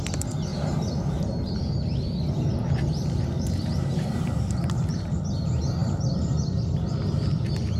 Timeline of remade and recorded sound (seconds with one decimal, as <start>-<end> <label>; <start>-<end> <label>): 0.0-0.5 recorded; 0.5-5.2 remade; 5.2-7.8 recorded